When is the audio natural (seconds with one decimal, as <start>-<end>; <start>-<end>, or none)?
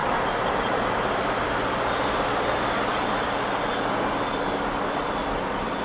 3.5-5.8